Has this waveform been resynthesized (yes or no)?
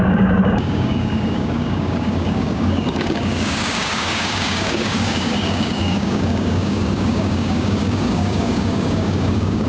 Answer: yes